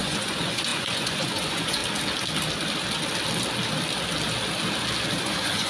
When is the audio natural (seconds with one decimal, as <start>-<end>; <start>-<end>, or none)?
1.8-5.2